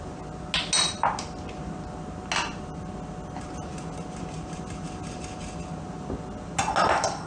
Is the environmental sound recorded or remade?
recorded